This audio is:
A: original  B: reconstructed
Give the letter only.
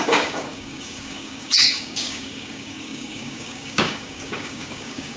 B